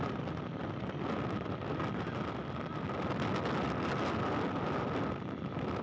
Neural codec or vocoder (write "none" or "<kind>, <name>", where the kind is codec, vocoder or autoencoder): none